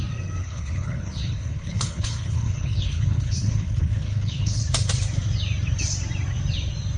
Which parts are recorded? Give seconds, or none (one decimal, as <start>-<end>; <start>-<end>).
0.0-0.4; 4.6-7.0